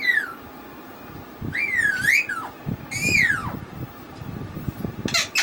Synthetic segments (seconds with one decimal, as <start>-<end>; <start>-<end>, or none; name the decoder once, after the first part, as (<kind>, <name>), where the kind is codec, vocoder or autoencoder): 3.4-4.8 (vocoder, BigVGAN v2)